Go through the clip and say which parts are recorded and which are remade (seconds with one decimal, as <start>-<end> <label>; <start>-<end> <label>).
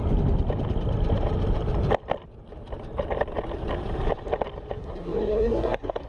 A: 0.0-4.8 recorded; 4.8-6.1 remade